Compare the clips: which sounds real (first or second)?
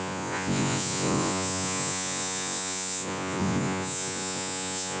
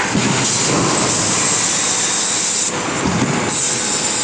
second